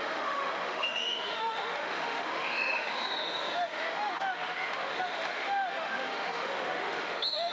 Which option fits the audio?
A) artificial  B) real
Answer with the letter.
A